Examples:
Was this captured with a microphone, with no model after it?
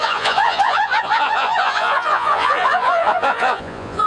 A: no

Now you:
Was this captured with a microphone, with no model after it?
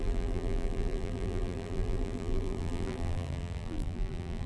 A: no